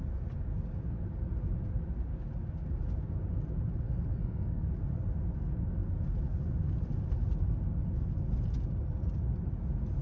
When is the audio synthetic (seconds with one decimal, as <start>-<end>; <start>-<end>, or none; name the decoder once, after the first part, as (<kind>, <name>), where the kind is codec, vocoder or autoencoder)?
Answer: 4.2-4.7 (codec, SNAC)